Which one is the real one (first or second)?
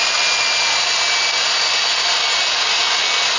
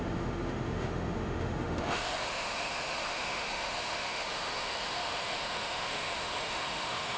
first